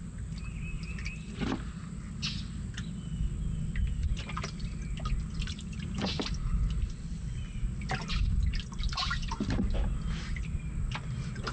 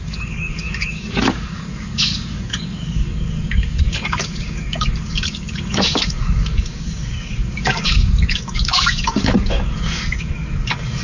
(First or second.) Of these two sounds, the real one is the first